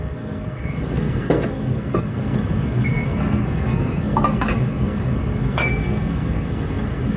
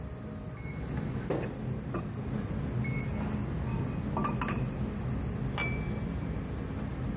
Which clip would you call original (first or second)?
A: second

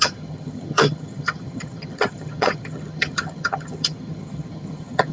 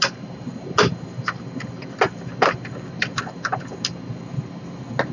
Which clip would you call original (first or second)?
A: second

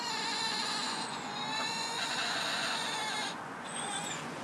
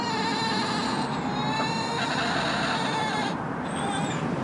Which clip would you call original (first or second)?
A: second